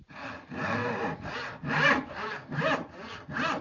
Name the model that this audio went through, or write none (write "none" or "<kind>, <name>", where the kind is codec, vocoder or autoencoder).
none